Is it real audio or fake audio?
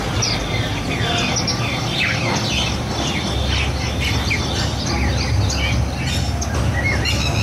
real